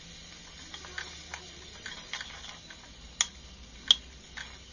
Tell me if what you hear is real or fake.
real